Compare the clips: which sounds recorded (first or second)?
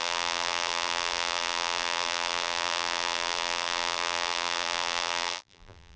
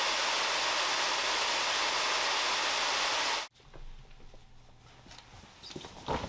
second